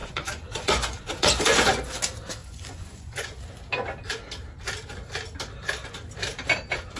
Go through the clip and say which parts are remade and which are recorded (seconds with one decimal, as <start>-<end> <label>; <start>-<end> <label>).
0.0-2.0 remade; 2.0-2.4 recorded; 2.4-3.4 remade; 3.4-7.0 recorded